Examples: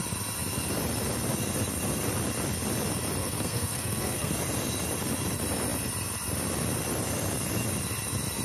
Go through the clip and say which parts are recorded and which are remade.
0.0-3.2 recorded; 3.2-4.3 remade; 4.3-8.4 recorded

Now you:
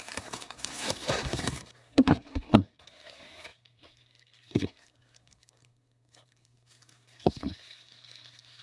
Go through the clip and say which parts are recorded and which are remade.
0.0-8.6 remade